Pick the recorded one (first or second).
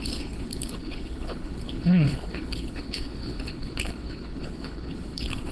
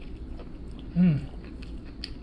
second